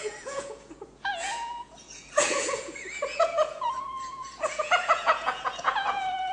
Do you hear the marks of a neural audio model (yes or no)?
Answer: yes